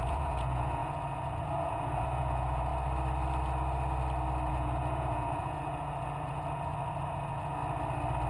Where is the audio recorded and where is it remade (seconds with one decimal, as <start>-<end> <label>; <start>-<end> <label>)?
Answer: 0.0-2.7 remade; 2.7-4.5 recorded; 4.5-7.6 remade; 7.6-8.3 recorded